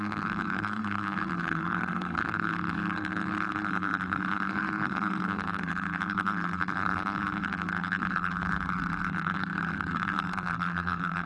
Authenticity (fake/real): fake